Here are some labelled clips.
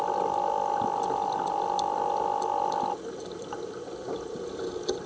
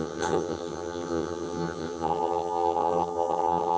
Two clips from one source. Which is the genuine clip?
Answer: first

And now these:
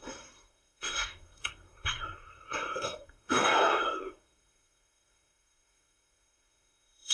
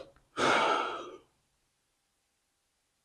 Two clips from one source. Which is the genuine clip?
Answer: second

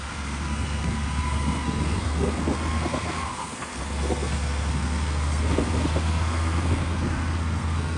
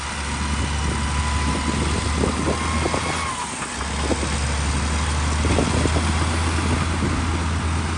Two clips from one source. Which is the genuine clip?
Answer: second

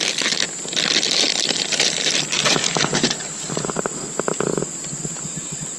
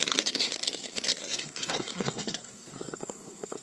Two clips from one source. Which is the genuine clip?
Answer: first